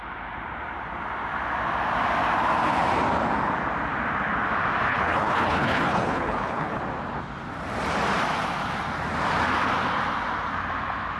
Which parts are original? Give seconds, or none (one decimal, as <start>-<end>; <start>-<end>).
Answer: 0.0-4.9; 6.8-11.2